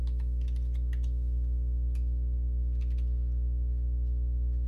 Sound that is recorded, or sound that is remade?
recorded